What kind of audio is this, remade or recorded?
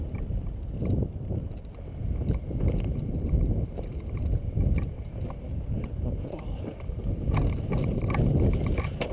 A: recorded